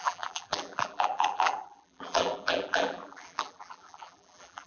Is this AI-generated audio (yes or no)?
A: yes